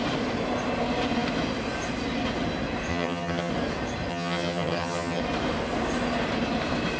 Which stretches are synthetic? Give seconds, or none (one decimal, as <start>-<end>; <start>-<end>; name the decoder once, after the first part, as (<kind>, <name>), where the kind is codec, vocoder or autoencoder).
2.9-3.5 (vocoder, HiFi-GAN); 4.1-5.2